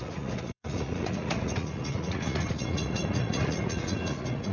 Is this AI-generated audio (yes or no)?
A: yes